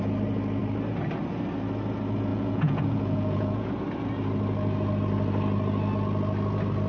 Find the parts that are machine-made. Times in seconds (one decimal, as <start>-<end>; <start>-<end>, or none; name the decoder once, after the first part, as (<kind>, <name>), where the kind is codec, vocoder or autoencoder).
2.3-3.7 (vocoder, Vocos)